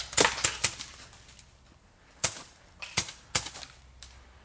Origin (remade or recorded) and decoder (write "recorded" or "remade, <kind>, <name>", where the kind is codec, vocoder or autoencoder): recorded